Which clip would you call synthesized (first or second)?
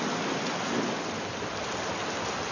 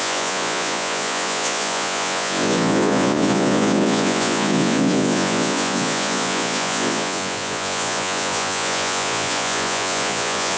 second